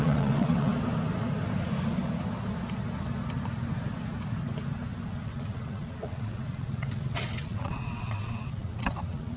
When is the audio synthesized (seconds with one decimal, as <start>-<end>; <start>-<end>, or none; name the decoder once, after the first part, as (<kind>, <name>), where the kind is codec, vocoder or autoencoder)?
0.0-0.7 (vocoder, WaveNeXt); 5.1-9.4